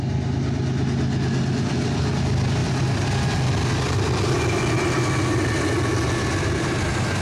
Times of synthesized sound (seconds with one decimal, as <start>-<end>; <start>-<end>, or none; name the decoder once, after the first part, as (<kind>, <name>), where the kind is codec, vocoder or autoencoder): none